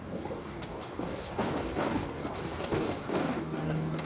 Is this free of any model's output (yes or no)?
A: no